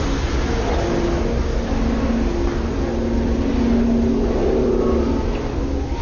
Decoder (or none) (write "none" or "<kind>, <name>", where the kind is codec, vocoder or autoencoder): none